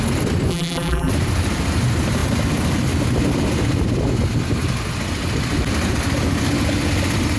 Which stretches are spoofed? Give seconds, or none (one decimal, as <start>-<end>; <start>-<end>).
0.5-1.1